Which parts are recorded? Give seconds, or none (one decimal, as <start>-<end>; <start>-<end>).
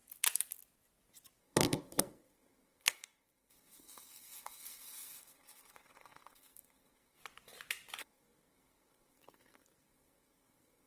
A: 0.0-1.4; 7.2-8.0